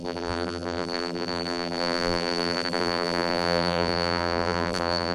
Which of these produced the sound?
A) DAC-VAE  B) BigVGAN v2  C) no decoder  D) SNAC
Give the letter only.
B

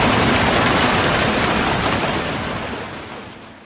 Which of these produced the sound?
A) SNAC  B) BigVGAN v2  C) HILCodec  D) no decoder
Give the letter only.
D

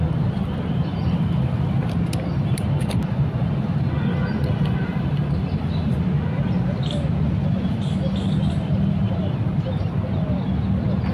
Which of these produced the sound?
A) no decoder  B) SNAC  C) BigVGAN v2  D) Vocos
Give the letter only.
A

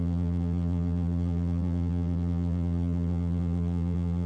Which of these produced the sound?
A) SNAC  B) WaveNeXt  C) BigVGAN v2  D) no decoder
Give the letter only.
C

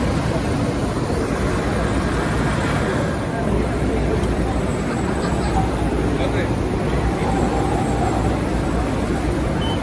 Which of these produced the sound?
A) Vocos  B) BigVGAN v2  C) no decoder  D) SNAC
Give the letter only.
B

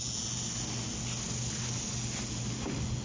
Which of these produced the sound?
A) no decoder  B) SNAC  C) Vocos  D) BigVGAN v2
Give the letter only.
A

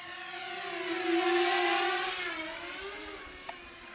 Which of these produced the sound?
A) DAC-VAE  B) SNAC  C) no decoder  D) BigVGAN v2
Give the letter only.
C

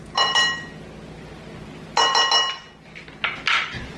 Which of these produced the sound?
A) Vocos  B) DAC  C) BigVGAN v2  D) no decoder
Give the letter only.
D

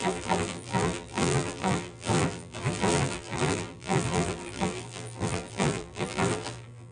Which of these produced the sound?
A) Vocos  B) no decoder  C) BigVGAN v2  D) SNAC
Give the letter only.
C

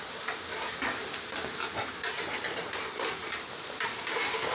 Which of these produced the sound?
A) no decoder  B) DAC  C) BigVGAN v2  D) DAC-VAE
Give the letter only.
C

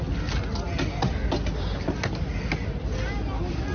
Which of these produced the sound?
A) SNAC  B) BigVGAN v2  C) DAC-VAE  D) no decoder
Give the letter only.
D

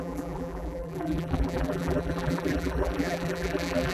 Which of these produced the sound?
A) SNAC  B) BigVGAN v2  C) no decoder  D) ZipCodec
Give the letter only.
B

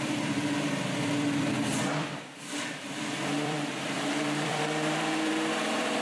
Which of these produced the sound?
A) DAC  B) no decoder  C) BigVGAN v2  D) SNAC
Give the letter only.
C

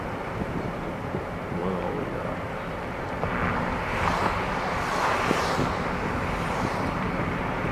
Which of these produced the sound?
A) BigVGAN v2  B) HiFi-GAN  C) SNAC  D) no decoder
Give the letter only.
D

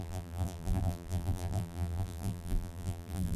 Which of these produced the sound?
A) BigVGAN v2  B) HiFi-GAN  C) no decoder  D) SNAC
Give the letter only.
A